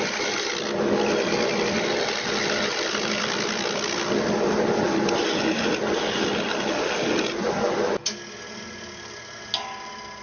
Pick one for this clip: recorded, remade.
recorded